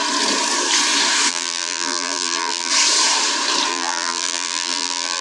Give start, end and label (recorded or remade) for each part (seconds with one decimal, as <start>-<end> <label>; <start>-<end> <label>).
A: 0.0-1.3 recorded; 1.3-2.7 remade; 2.7-3.7 recorded; 3.7-5.2 remade